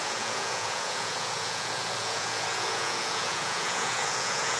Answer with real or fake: fake